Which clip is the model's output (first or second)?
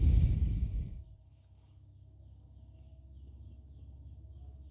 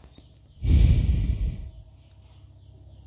first